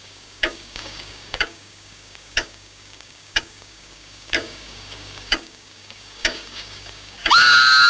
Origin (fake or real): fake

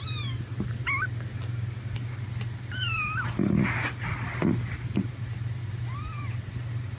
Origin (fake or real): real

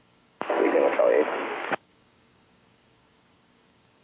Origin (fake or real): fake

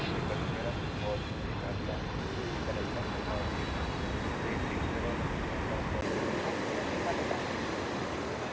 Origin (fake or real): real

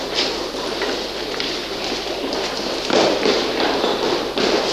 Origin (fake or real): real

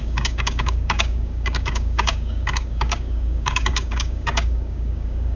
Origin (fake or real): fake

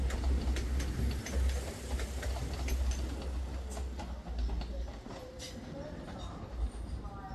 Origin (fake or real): real